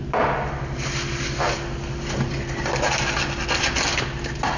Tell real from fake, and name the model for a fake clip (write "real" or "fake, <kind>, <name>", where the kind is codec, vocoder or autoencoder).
real